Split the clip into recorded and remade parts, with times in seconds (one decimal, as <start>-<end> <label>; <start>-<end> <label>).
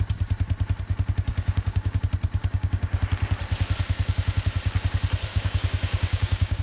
0.0-1.3 recorded; 1.3-2.0 remade; 2.0-2.4 recorded; 2.4-3.0 remade; 3.0-5.3 recorded; 5.3-6.6 remade